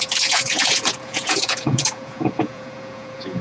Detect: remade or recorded remade